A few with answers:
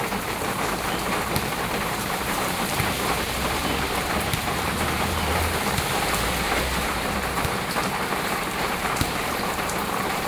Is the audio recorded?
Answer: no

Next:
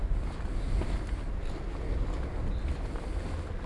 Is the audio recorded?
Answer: yes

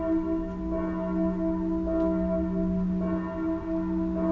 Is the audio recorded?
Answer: yes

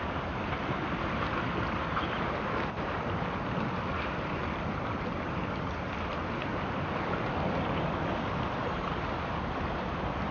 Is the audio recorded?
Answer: yes